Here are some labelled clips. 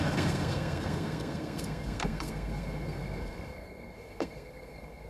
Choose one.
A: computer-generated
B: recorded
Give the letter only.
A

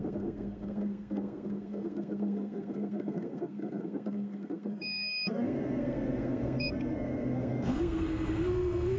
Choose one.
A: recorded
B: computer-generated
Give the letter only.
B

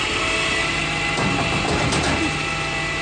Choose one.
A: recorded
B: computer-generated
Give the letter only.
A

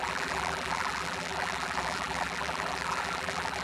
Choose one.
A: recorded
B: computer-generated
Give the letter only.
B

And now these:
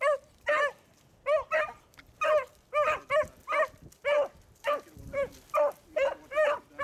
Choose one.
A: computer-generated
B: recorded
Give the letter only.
B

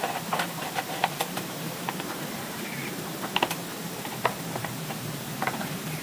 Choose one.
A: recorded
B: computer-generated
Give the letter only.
B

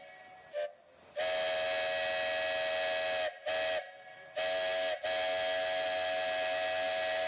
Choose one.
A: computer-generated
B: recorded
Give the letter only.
B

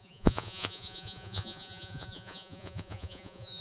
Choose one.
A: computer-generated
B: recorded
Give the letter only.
A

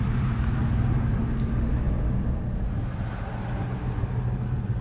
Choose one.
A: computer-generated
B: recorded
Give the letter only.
B